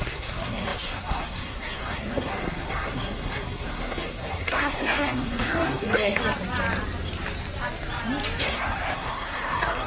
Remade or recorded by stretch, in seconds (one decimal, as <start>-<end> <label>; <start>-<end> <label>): 0.0-6.2 remade; 6.2-8.4 recorded; 8.4-9.9 remade